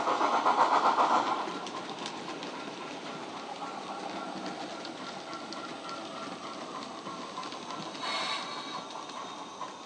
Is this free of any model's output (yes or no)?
yes